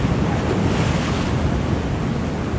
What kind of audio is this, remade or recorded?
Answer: recorded